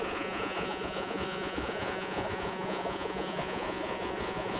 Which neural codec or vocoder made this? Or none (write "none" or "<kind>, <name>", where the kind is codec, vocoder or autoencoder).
vocoder, Vocos